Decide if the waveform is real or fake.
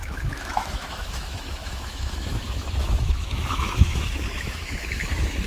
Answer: fake